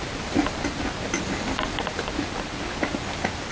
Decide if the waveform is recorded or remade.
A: recorded